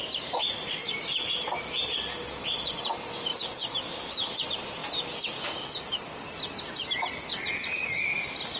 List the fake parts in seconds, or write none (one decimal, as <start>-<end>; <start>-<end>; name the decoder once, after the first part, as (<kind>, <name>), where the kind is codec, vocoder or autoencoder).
0.8-1.8 (autoencoder, DAC-VAE); 3.3-4.3